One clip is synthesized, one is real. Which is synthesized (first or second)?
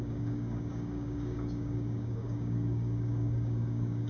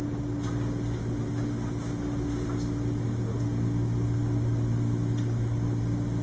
first